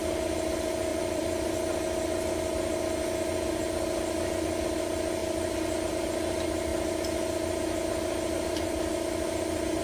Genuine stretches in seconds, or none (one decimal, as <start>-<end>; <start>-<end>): 0.0-0.9; 1.5-5.2; 5.9-6.7